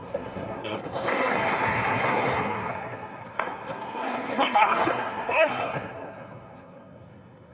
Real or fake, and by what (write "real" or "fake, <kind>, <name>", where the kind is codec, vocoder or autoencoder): fake, codec, SNAC